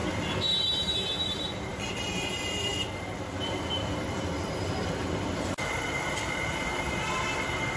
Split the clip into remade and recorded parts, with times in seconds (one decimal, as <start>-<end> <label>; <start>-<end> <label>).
0.0-0.6 recorded; 0.6-7.8 remade

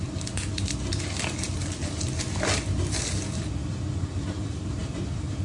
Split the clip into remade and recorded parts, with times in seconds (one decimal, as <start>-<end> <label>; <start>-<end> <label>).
0.0-4.8 recorded; 4.8-5.4 remade

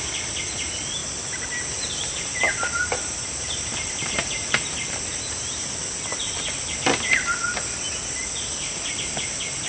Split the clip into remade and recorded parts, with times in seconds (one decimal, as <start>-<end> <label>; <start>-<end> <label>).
0.0-1.0 recorded; 1.0-5.7 remade; 5.7-9.7 recorded